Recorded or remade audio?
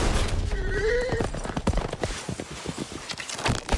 recorded